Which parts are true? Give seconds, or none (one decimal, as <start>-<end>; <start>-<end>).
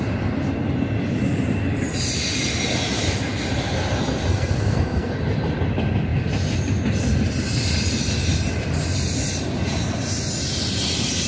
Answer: 0.0-4.3; 5.1-11.3